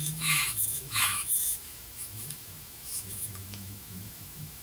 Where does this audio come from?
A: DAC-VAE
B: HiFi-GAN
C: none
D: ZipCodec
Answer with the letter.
A